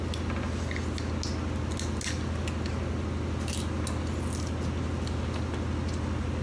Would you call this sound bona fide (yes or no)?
yes